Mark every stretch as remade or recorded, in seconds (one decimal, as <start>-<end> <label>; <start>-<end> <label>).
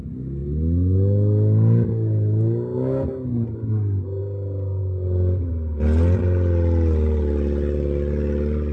0.0-8.7 recorded